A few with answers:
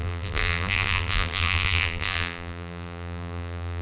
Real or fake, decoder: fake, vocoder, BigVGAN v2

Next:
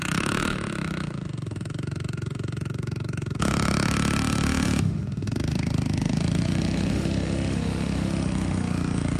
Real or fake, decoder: fake, autoencoder, DAC-VAE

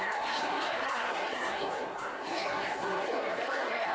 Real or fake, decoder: fake, codec, SNAC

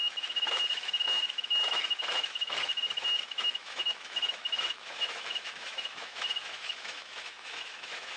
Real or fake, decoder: fake, autoencoder, DAC-VAE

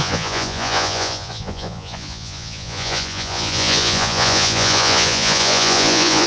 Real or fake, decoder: fake, vocoder, Vocos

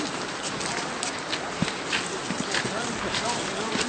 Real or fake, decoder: real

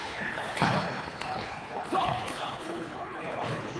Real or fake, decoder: fake, codec, HILCodec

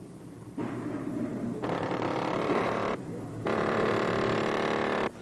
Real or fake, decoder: fake, vocoder, BigVGAN v2